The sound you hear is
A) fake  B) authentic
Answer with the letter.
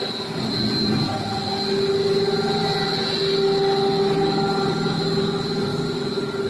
B